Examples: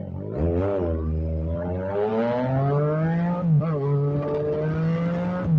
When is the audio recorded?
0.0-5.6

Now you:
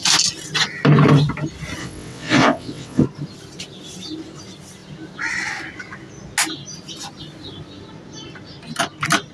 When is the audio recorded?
0.0-1.8; 3.0-9.3

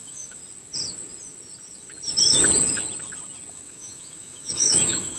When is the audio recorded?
0.4-3.5

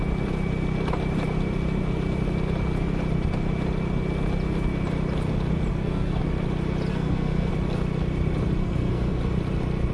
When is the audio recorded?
0.0-5.7; 6.2-6.9; 7.5-8.6; 9.2-9.9

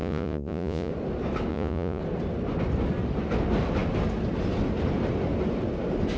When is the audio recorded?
0.9-1.5; 2.0-6.2